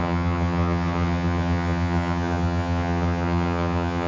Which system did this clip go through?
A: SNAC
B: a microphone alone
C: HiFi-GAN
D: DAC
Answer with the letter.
C